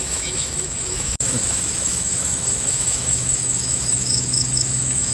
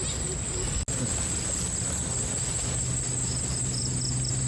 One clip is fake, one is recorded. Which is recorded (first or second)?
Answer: second